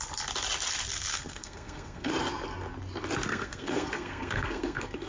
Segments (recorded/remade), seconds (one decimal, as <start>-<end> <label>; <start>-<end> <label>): 0.0-1.1 recorded; 1.1-2.1 remade; 2.1-3.3 recorded; 3.3-5.1 remade